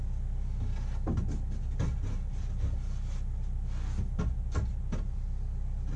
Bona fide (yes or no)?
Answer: yes